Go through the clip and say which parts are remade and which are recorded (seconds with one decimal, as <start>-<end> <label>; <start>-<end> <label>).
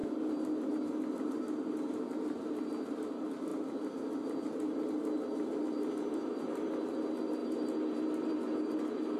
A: 0.0-9.2 recorded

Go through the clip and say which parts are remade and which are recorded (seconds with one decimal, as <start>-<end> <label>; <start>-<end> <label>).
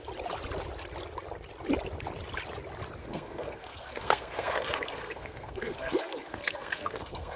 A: 0.0-3.0 recorded; 3.0-7.4 remade